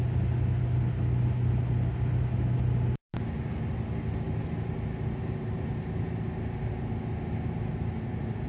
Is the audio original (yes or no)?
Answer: yes